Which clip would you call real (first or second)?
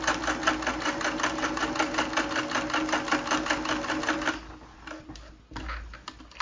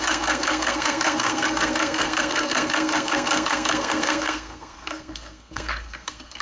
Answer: first